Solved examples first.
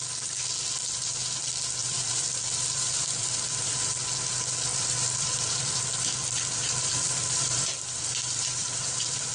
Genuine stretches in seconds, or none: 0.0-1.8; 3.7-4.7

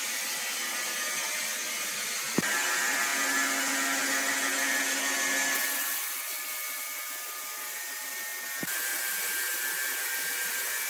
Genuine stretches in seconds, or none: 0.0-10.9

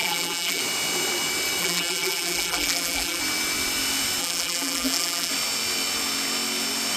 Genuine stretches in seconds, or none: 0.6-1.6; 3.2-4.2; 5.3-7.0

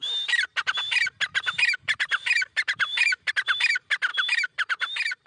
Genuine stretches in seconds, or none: 0.0-1.3; 3.3-4.1

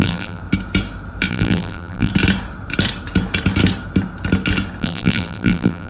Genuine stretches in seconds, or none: 0.4-1.3; 2.1-4.8

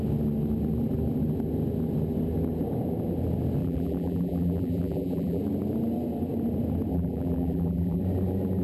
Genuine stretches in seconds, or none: 0.0-3.6; 5.4-6.9; 8.0-8.6

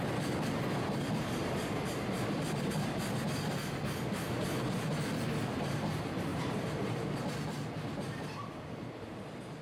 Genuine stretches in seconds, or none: 0.0-6.3; 7.2-9.6

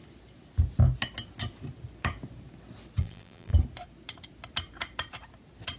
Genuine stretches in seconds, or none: 0.0-3.0; 3.5-5.8